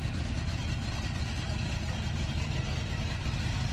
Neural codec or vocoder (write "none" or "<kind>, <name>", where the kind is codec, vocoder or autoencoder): none